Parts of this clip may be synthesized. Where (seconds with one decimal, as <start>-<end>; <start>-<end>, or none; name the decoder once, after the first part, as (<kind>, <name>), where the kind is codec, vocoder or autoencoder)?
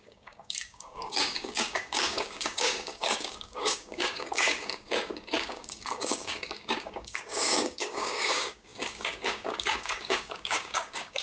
0.0-11.2 (codec, DAC)